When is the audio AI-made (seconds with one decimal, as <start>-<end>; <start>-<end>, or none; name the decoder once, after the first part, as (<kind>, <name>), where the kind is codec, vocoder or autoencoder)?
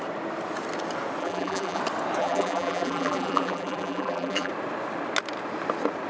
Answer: 1.2-1.8 (vocoder, BigVGAN v2); 2.2-4.5